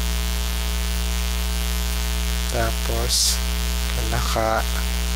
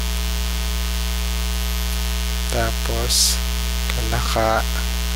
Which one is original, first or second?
second